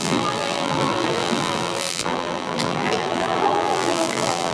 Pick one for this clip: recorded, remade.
remade